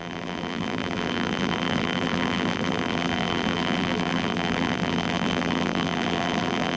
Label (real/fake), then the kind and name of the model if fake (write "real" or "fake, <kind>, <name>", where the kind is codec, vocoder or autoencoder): fake, vocoder, BigVGAN v2